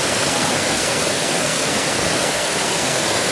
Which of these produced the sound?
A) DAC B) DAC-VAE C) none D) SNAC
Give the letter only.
D